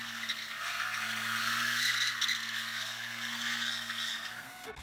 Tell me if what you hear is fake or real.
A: fake